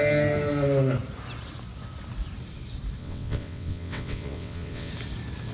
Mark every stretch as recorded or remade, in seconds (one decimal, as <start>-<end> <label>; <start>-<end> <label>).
0.0-3.0 recorded; 3.0-4.9 remade; 4.9-5.5 recorded